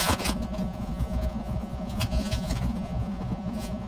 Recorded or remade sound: remade